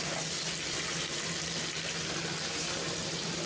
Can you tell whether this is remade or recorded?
recorded